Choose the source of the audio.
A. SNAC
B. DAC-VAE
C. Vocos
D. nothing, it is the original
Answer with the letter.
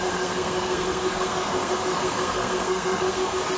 A